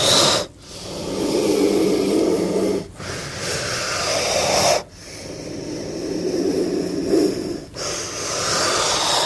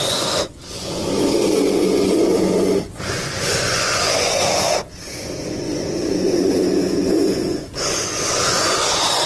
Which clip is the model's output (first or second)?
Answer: second